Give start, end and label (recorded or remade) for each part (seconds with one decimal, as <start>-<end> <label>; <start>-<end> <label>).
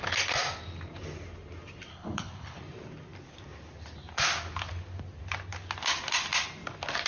0.0-1.9 recorded; 1.9-2.6 remade; 2.6-7.1 recorded